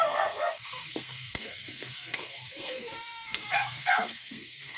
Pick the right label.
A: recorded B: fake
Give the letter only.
B